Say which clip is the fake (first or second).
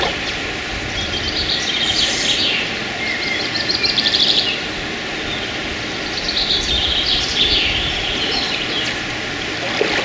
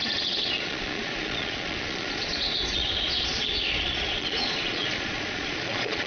second